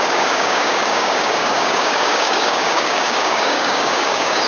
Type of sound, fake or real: fake